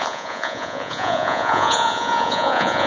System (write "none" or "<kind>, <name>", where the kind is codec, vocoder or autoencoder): vocoder, Vocos